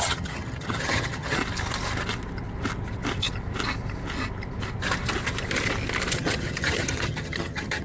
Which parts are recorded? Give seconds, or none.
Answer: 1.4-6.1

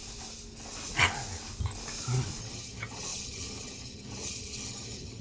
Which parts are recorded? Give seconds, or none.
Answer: 0.0-2.4

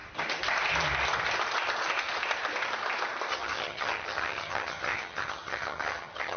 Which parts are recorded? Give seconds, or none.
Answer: 0.0-3.3

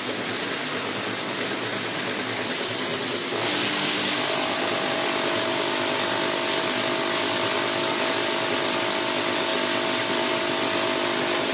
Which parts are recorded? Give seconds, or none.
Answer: 0.0-11.5

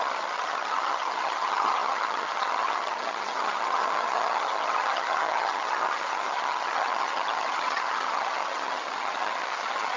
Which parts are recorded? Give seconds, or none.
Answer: none

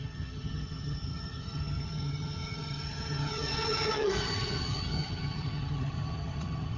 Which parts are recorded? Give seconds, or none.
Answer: none